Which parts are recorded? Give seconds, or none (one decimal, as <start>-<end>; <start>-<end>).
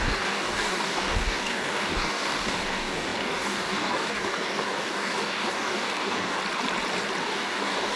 6.4-7.2